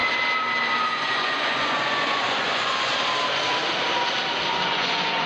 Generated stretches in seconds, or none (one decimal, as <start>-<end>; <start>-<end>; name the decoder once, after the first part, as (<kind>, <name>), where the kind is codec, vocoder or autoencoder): 0.8-2.9 (vocoder, Vocos); 4.5-5.3